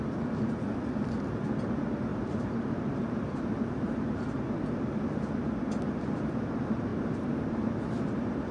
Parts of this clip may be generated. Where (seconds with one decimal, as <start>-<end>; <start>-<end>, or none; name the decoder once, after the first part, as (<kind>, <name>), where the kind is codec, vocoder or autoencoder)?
2.1-4.6 (vocoder, BigVGAN v2); 6.9-8.5